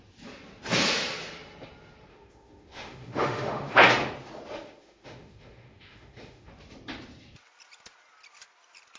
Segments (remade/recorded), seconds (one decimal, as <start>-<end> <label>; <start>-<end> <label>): 0.0-2.1 recorded; 2.1-3.9 remade; 3.9-4.5 recorded; 4.5-6.5 remade; 6.5-9.0 recorded